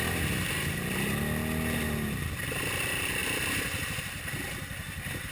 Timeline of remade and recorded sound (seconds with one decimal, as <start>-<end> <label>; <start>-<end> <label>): 0.0-5.3 recorded